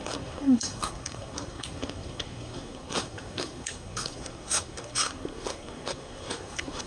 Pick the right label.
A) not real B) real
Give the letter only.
A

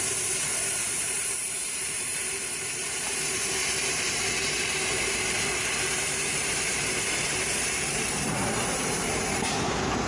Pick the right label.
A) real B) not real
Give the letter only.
B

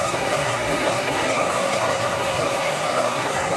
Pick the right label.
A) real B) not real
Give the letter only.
B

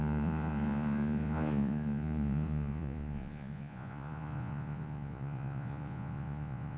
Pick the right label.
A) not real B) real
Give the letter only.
A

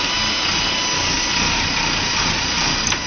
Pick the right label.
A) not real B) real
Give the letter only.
B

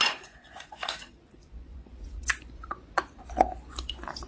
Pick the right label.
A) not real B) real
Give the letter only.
A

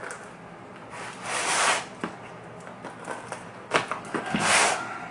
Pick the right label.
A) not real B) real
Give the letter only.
B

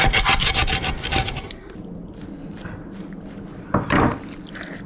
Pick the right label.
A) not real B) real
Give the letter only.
B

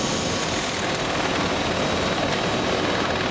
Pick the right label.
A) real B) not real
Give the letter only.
A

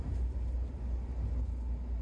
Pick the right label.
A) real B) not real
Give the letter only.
A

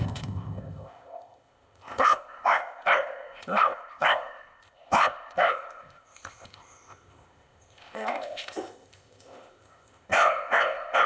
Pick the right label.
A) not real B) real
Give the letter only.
A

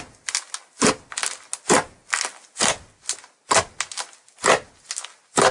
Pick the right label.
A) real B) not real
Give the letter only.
A